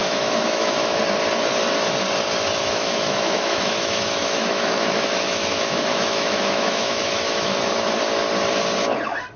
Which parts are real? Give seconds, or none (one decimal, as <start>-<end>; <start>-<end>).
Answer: 1.0-2.6; 7.7-9.4